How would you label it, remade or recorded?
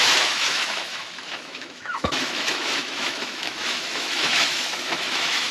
remade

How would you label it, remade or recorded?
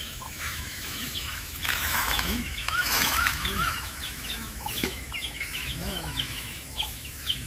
remade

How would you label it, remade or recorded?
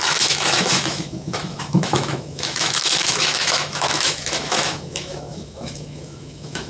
remade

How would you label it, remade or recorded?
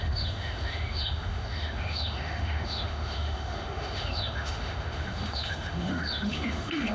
remade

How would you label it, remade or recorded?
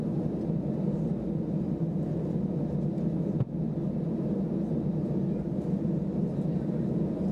recorded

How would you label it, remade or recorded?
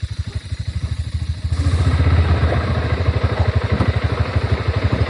recorded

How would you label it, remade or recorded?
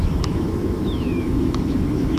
remade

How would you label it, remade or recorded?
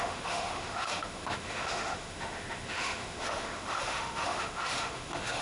remade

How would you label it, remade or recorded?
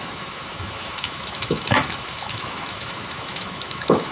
remade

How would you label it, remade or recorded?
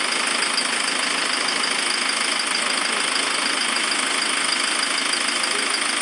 recorded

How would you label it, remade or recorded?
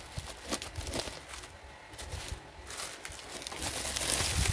recorded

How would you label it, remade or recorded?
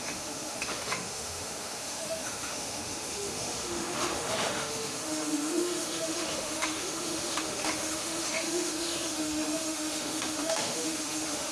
remade